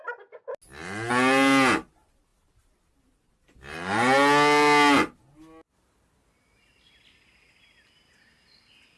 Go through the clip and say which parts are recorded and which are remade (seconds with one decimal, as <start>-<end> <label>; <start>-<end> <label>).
0.0-9.0 recorded